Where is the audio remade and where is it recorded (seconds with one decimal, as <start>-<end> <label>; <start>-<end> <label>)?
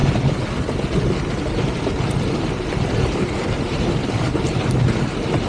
0.0-3.0 recorded; 3.0-5.5 remade